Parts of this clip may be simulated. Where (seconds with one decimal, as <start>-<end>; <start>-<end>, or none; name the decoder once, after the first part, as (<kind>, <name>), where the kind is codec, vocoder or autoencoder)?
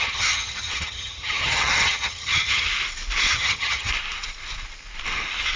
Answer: 0.0-2.7 (vocoder, HiFi-GAN); 3.3-3.9